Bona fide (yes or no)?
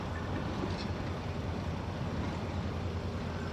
yes